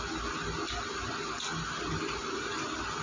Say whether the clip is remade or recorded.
recorded